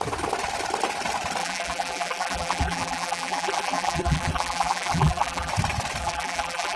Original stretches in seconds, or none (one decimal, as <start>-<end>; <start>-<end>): 0.0-1.4; 5.5-6.0